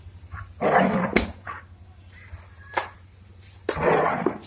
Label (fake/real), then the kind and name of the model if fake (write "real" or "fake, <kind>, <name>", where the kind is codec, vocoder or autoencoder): fake, vocoder, BigVGAN v2